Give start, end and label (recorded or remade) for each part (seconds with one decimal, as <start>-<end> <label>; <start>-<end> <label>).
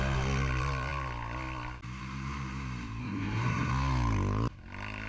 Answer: 0.0-3.0 recorded; 3.0-3.7 remade; 3.7-5.1 recorded